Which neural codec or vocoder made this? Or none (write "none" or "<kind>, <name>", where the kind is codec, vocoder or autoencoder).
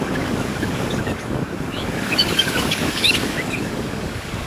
codec, DAC